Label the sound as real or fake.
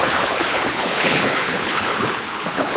fake